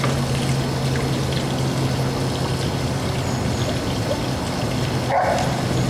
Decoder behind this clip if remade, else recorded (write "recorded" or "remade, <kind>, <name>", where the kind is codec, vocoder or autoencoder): recorded